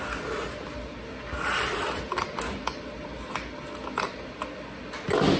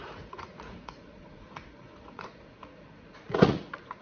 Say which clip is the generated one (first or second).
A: second